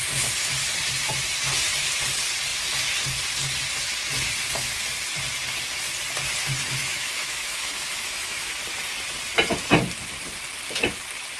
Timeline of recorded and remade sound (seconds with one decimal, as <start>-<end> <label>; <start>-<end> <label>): 0.0-6.8 recorded; 6.8-8.5 remade; 8.5-11.4 recorded